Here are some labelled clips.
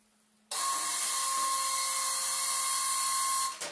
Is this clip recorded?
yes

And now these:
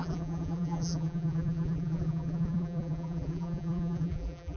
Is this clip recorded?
no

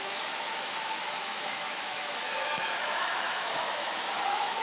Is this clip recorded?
no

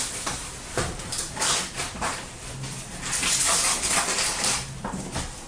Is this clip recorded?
no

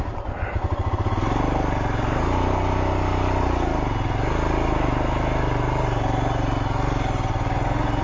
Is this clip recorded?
yes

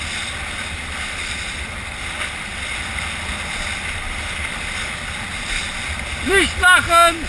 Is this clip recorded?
yes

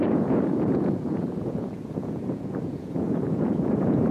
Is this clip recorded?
no